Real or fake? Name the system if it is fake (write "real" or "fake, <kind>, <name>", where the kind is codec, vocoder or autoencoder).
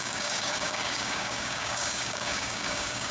fake, codec, DAC